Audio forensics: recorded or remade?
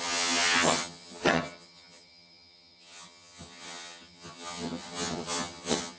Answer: remade